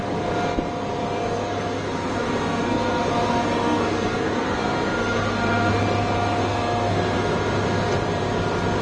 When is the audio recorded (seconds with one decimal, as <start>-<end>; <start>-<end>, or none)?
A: 0.0-1.2; 5.7-6.4; 7.0-8.8